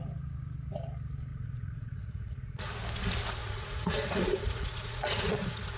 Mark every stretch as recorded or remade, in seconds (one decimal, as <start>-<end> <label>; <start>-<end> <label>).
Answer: 0.0-1.3 recorded; 1.3-2.7 remade; 2.7-3.4 recorded; 3.4-5.8 remade